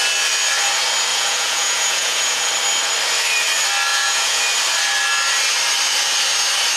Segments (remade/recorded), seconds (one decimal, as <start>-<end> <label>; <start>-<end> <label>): 0.0-1.1 recorded; 1.1-2.5 remade; 2.5-3.9 recorded; 3.9-4.4 remade; 4.4-6.8 recorded